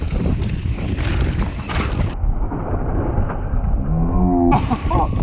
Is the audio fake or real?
real